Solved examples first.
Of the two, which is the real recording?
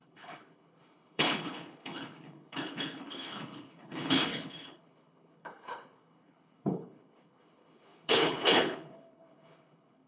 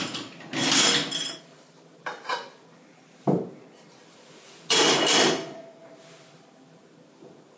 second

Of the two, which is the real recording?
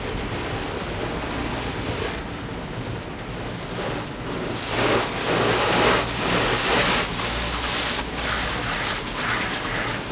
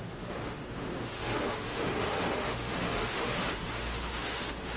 first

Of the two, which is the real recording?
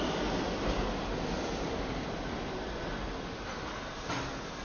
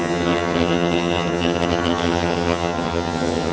first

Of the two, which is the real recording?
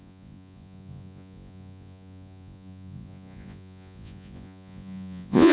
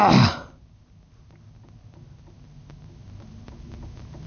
second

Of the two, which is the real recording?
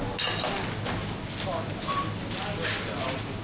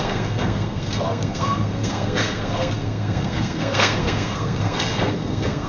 first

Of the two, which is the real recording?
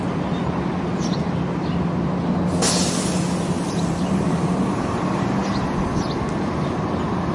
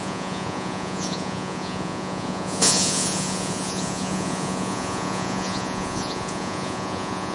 first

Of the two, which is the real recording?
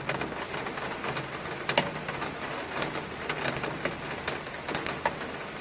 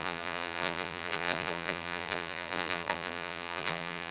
first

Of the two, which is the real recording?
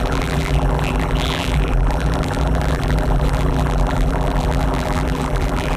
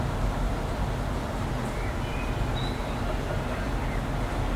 second